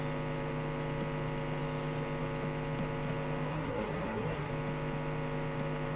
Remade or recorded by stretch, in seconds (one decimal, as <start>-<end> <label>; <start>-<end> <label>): 0.0-3.5 recorded; 3.5-4.5 remade; 4.5-6.0 recorded